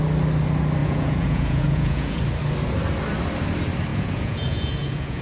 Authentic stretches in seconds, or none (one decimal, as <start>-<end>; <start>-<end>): 0.0-0.8; 2.2-3.9

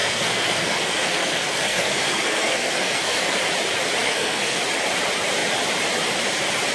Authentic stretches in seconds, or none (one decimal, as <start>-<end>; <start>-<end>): 3.4-4.0; 4.6-6.7

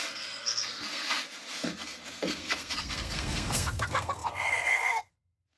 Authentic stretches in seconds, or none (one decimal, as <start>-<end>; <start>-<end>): none

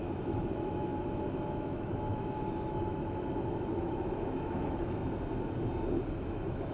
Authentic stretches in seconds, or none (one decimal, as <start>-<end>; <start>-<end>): 0.9-1.5; 5.0-6.3